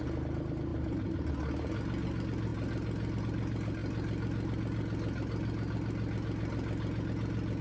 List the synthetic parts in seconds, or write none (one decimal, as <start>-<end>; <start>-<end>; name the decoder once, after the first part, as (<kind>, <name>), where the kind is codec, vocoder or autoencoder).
0.7-1.3 (vocoder, BigVGAN v2)